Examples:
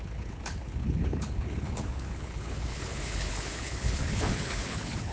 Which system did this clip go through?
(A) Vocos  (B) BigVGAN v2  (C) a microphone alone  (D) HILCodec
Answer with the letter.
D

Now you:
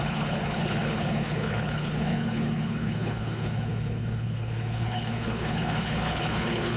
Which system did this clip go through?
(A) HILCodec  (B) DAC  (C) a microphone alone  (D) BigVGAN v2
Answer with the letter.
A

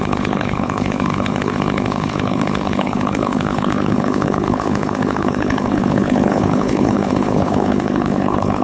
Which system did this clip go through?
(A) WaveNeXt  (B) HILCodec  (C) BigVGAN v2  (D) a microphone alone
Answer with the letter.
B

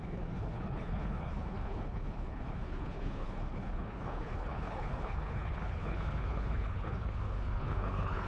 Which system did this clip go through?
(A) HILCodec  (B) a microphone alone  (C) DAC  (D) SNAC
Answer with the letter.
A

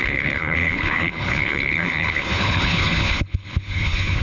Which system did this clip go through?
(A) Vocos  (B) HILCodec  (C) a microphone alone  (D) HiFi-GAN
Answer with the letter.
B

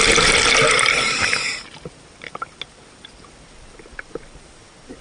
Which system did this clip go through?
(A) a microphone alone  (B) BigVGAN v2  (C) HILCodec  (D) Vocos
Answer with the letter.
A